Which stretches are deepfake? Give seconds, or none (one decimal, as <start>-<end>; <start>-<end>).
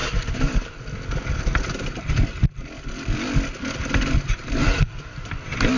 none